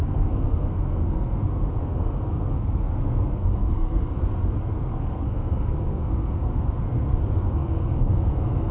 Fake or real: fake